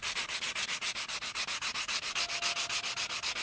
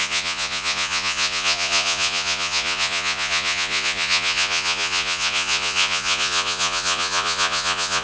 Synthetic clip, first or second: second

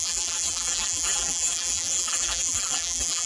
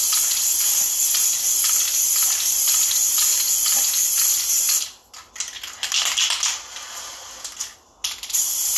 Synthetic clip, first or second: first